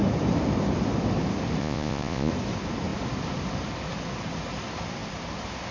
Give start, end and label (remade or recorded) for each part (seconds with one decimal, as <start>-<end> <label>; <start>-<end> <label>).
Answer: 0.0-1.6 recorded; 1.6-2.3 remade; 2.3-5.7 recorded